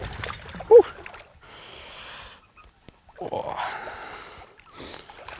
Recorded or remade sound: recorded